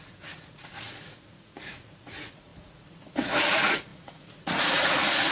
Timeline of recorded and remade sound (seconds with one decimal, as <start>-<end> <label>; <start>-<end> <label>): 0.0-5.3 remade